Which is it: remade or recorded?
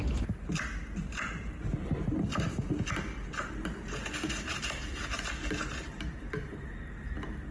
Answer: recorded